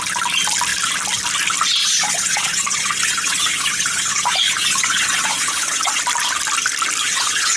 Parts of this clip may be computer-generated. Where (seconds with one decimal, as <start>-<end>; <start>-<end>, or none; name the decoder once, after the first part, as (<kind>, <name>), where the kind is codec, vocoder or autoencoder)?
1.8-6.0 (vocoder, Vocos); 7.0-7.6